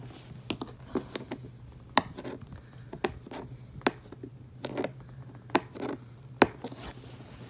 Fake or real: real